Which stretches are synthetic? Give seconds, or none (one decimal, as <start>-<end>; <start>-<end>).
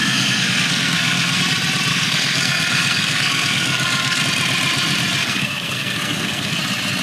0.0-1.4; 1.9-4.2; 5.2-6.6